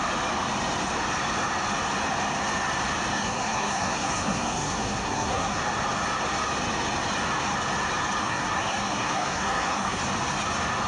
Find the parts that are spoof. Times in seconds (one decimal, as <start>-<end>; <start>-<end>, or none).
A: 3.1-5.6; 8.2-10.0